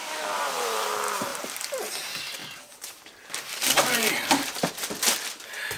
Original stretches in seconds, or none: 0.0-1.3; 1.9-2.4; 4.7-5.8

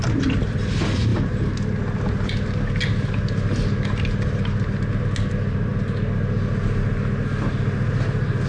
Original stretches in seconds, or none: 1.1-5.0; 5.7-7.9

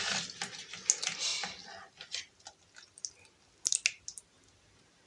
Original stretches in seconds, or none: 0.0-5.1

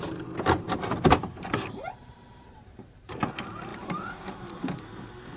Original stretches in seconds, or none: 0.0-1.2; 3.3-3.7; 4.6-5.4

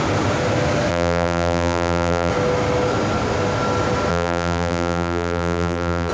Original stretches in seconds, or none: 0.0-0.9; 2.3-4.1